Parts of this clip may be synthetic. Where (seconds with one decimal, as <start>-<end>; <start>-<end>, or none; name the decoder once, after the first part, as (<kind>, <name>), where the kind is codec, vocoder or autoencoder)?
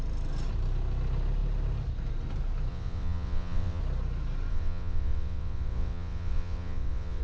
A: 2.7-3.8 (vocoder, WaveNeXt); 4.5-7.2